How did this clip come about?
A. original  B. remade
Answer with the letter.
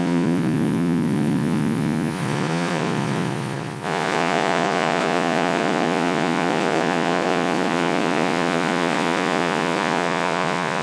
B